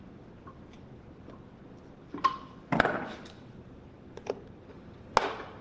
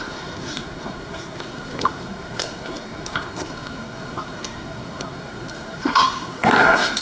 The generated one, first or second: second